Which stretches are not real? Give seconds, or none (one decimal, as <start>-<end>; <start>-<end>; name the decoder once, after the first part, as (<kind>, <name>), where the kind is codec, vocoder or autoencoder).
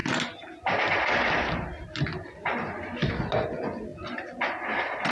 none